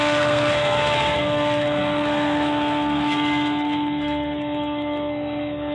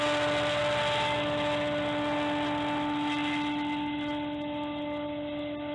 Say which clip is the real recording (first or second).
second